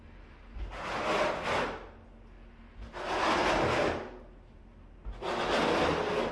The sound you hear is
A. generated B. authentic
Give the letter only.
B